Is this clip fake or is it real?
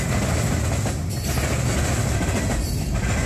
real